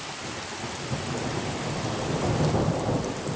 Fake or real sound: real